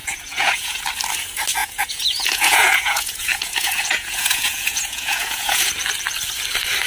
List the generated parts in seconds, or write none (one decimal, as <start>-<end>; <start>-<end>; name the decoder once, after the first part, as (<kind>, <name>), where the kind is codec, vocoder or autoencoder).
0.0-0.8 (vocoder, Vocos); 1.6-5.7